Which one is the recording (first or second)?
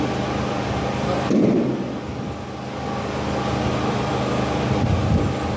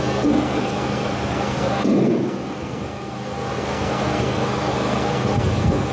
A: first